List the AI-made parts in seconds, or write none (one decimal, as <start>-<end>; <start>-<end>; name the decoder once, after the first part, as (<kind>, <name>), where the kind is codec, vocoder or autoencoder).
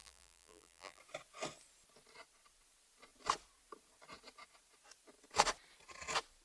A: 0.0-1.0 (vocoder, BigVGAN v2)